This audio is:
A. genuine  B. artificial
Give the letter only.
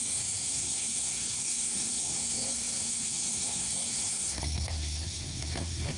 B